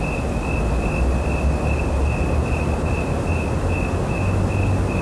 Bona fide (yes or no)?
no